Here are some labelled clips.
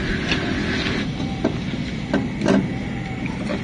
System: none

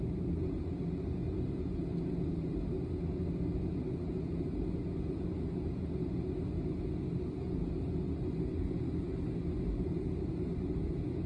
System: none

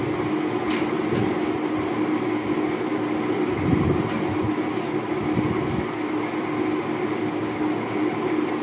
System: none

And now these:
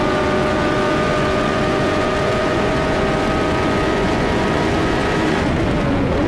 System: vocoder, Vocos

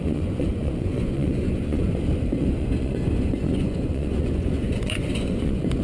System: vocoder, Vocos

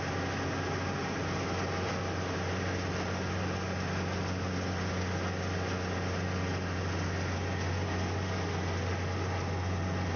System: none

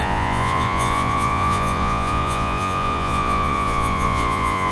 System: vocoder, Vocos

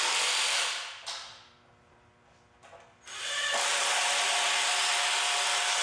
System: none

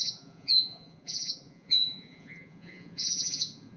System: vocoder, Vocos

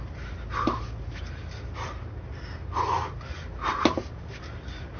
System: none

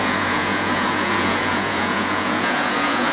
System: vocoder, Vocos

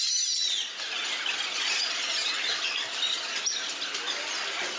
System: none